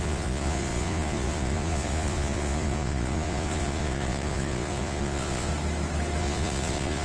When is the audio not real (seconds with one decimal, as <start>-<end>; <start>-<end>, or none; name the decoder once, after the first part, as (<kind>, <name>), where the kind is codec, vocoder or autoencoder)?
0.0-5.5 (vocoder, Vocos); 6.2-7.0